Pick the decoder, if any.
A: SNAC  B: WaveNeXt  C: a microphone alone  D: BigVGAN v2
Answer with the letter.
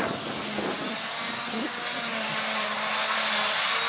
C